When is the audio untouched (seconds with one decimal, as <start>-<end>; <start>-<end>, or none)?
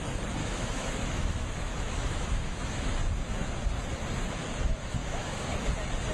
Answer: 0.0-0.4; 2.9-5.0; 5.5-6.1